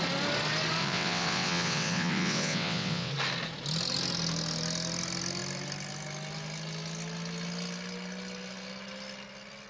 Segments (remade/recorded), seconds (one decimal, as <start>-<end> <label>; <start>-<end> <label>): 0.0-0.8 recorded; 0.8-3.1 remade; 3.1-9.7 recorded